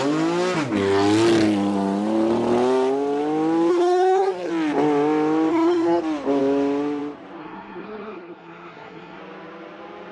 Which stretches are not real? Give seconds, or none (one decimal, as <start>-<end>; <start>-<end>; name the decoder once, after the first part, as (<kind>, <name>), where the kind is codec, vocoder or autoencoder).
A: 3.7-4.5 (codec, SNAC); 5.5-6.0; 7.4-9.2